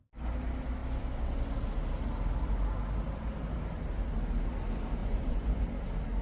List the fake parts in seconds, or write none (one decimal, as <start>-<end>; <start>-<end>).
5.0-5.6